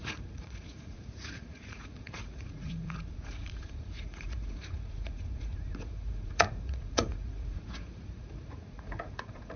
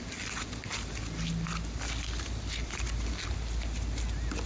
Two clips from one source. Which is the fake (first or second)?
first